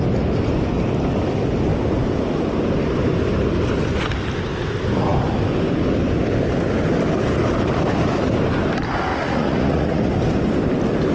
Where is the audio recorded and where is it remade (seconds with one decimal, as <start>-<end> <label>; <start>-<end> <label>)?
0.0-9.1 recorded; 9.1-10.1 remade; 10.1-11.1 recorded